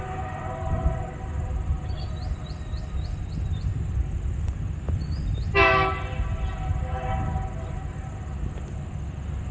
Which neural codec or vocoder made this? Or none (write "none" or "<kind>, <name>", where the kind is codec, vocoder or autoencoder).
none